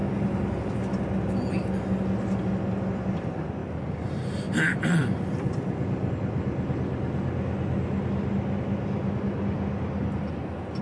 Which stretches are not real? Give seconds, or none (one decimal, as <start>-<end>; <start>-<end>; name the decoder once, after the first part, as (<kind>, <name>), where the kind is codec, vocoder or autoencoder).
3.6-6.1 (vocoder, BigVGAN v2)